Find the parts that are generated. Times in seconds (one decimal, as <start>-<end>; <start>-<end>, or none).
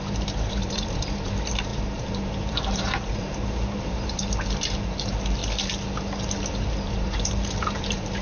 0.0-5.4; 6.6-8.2